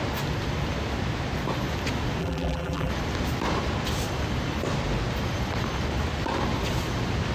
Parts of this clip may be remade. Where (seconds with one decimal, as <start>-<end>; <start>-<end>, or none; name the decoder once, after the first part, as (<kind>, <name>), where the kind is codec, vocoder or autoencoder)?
2.2-2.9 (vocoder, BigVGAN v2)